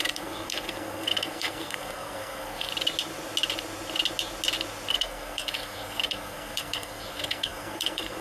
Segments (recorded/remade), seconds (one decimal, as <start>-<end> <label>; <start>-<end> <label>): 0.0-2.7 remade; 2.7-4.9 recorded; 4.9-8.2 remade